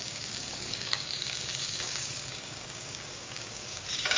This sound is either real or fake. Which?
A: fake